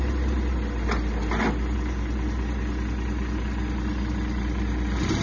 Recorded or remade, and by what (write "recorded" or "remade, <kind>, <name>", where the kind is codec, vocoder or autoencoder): recorded